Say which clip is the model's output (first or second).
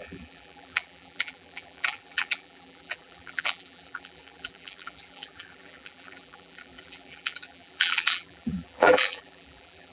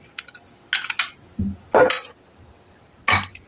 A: first